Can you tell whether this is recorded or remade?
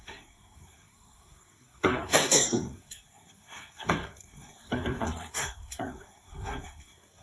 remade